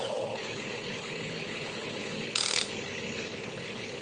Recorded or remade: remade